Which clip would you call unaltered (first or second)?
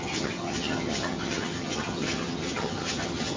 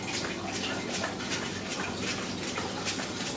second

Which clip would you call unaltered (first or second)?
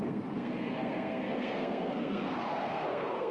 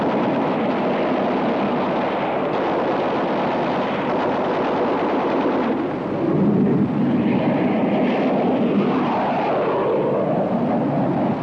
second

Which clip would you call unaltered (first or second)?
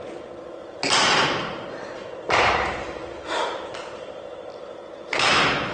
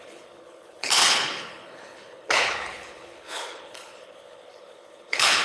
first